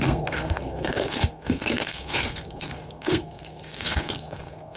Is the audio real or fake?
fake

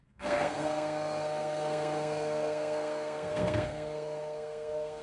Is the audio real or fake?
fake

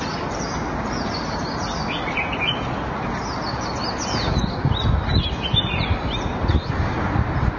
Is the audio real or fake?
real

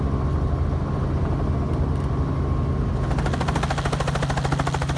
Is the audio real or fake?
real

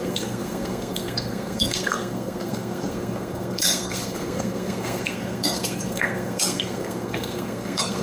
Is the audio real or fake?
fake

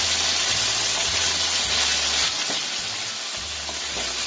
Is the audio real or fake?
real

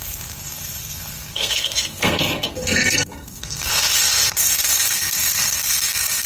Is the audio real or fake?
fake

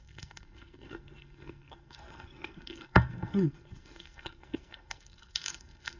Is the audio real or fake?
fake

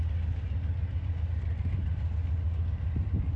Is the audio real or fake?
real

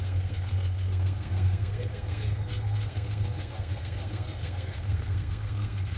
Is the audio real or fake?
fake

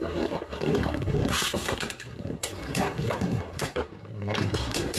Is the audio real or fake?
fake